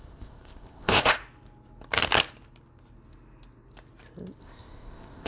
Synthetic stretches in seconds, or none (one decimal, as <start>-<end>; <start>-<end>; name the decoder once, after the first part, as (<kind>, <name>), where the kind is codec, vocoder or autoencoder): 0.0-1.2 (codec, ZipCodec); 4.4-5.3